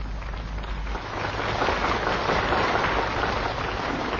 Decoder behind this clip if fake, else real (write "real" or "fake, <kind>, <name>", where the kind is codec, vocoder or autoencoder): real